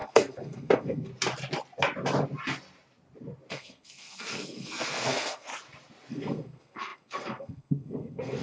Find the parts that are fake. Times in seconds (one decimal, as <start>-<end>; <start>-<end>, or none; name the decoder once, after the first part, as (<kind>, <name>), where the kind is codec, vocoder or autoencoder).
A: 0.0-1.1 (codec, SNAC); 3.5-5.5; 6.1-8.4